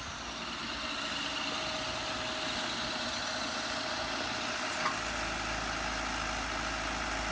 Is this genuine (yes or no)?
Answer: yes